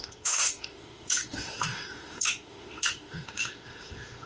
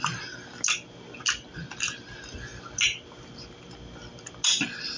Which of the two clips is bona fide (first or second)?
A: second